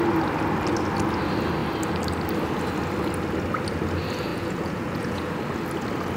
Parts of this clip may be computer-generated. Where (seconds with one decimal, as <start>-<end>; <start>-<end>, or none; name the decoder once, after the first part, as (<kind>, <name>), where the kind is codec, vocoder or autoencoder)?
4.3-5.3 (vocoder, Vocos)

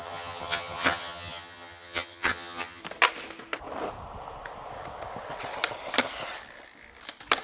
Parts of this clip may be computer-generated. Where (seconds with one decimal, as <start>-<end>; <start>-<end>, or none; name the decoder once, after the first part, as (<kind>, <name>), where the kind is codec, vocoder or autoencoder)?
0.0-2.8 (vocoder, HiFi-GAN)